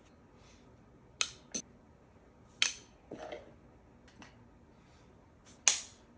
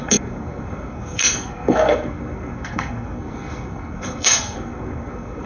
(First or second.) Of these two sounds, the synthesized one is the second